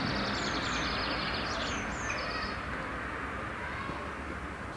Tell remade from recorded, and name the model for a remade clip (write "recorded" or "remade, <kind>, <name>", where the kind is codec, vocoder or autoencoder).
recorded